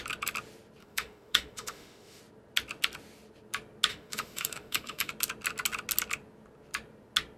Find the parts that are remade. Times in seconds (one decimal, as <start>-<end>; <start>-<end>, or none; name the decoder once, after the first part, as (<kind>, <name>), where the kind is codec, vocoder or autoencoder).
0.8-2.2 (autoencoder, DAC-VAE); 3.9-5.1

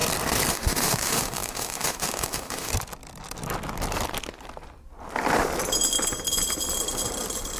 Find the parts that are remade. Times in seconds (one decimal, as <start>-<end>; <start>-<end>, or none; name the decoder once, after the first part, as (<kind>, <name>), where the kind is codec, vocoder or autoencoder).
0.5-2.7 (autoencoder, DAC-VAE)